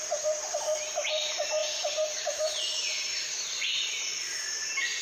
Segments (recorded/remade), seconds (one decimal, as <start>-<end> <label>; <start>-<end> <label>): 0.0-1.6 recorded; 1.6-2.6 remade; 2.6-5.0 recorded